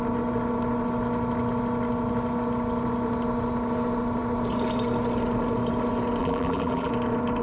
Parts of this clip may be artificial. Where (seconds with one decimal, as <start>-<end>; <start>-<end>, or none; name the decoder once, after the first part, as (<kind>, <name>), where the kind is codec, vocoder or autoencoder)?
6.2-6.9 (vocoder, BigVGAN v2)